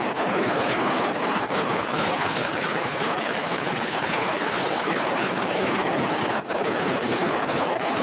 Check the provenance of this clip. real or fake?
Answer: fake